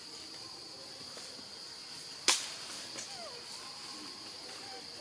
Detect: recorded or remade recorded